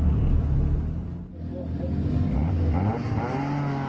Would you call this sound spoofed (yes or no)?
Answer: no